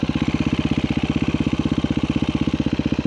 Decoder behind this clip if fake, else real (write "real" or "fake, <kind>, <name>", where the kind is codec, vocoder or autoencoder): real